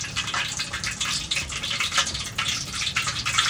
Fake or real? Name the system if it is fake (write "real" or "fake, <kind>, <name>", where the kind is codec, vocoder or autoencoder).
fake, vocoder, BigVGAN v2